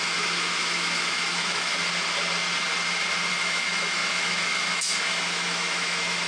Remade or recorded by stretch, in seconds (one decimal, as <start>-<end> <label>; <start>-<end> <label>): 0.0-1.7 remade; 1.7-3.3 recorded; 3.3-6.3 remade